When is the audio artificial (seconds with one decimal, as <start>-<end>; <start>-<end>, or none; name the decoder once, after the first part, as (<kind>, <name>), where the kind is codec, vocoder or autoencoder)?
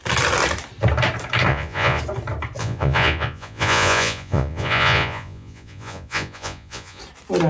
1.5-2.0 (vocoder, Vocos); 2.6-7.0